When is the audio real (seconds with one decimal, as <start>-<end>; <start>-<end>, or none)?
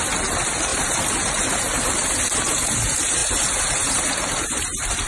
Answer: none